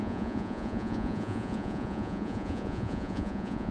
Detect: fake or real fake